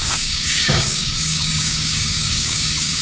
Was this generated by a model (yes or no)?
yes